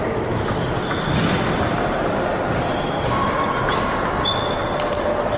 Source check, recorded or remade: recorded